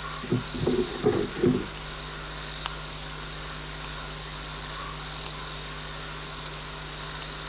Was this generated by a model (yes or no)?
no